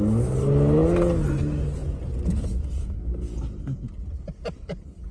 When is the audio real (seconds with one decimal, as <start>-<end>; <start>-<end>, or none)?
0.0-5.1

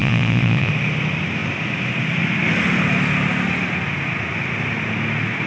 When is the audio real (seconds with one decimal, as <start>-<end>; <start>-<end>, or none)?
0.7-5.5

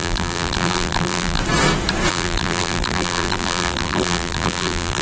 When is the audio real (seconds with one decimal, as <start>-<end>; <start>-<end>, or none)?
1.4-2.1

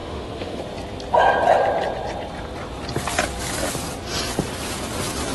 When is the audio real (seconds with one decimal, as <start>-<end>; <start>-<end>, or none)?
0.6-5.3

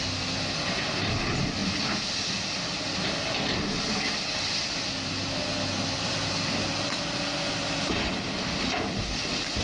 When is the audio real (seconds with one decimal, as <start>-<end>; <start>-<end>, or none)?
0.0-9.6

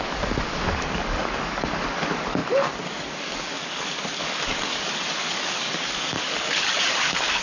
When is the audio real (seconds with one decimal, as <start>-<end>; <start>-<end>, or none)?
none

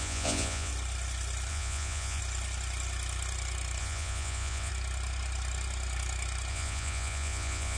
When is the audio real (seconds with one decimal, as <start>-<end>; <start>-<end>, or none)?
0.7-1.5; 2.2-3.8; 4.7-6.5